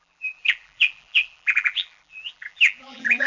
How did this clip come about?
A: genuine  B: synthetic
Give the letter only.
B